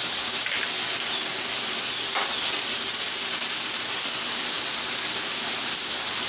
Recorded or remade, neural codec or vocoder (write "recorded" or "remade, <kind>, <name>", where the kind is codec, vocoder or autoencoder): recorded